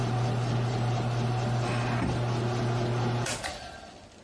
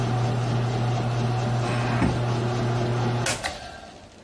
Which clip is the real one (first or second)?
second